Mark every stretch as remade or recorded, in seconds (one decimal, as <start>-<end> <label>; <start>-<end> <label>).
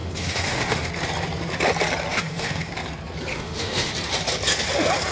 0.0-0.9 remade; 0.9-2.1 recorded; 2.1-2.7 remade; 2.7-3.3 recorded; 3.3-3.9 remade; 3.9-5.1 recorded